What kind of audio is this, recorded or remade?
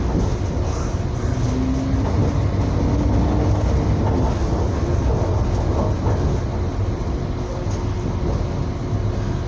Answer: recorded